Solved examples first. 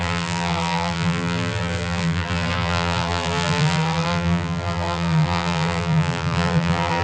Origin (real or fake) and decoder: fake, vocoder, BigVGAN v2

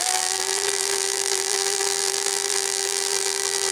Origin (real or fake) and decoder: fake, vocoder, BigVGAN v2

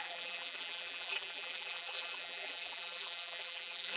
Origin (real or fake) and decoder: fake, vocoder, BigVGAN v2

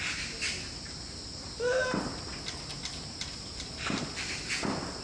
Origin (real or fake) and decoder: real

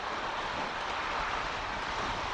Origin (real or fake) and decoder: fake, vocoder, BigVGAN v2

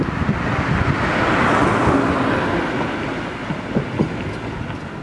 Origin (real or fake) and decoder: real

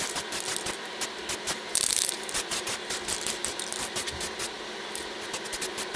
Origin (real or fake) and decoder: real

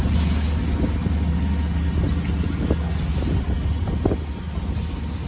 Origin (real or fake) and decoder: real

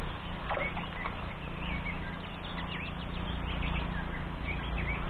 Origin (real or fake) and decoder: real